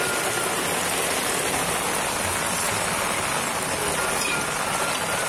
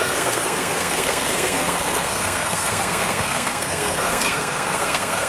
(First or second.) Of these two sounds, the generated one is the second